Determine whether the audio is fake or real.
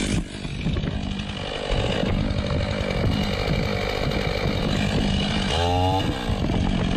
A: real